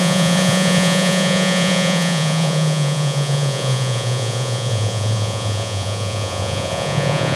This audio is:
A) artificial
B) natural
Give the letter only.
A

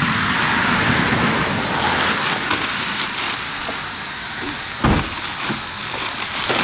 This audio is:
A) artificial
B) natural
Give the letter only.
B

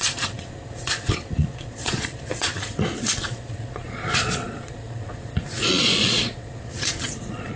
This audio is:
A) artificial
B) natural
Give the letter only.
A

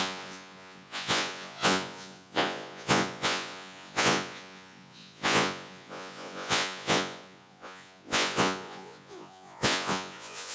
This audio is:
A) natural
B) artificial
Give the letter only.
B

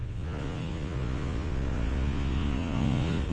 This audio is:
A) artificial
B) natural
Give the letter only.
A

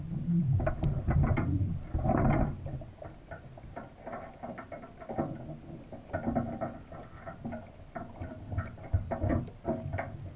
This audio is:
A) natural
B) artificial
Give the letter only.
A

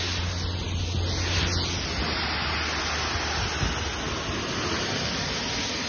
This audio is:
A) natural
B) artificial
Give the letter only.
A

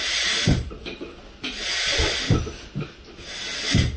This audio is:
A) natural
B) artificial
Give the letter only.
A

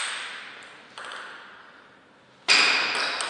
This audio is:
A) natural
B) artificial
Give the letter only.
A